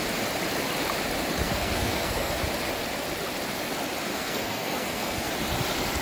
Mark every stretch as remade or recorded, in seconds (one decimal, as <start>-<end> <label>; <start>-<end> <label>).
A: 0.0-1.4 recorded; 1.4-2.4 remade; 2.4-4.1 recorded; 4.1-5.3 remade; 5.3-6.0 recorded